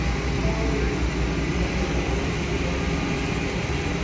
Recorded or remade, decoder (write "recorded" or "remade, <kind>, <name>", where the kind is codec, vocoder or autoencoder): recorded